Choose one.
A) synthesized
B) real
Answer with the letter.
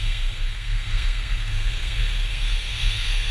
A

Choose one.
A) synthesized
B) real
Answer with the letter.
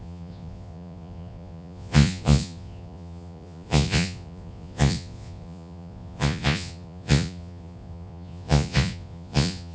A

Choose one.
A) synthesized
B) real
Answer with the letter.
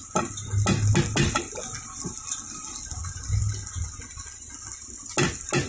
B